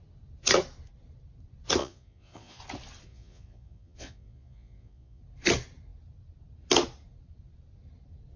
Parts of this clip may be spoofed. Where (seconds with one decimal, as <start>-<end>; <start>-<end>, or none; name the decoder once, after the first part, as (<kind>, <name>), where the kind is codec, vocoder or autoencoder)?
1.8-2.6 (vocoder, Vocos); 3.1-5.2